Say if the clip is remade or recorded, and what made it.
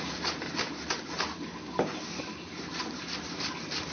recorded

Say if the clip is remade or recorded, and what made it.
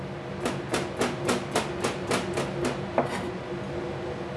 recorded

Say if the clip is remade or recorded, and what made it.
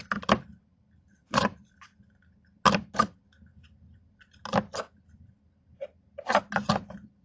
recorded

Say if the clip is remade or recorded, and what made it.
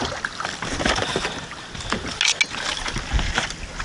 recorded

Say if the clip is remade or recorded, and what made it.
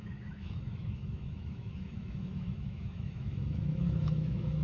remade, autoencoder, DAC-VAE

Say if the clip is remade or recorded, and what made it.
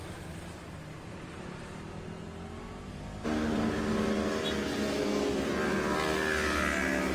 recorded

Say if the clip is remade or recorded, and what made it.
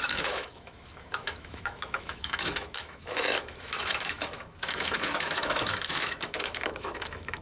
remade, autoencoder, DAC-VAE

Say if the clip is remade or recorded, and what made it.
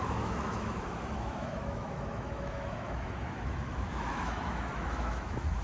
remade, autoencoder, DAC-VAE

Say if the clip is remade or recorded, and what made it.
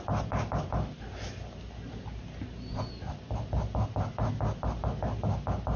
recorded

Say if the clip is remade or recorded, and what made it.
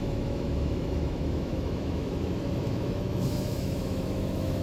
remade, autoencoder, DAC-VAE